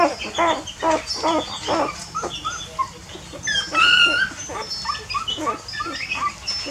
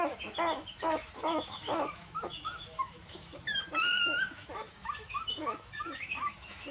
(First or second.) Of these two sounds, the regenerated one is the second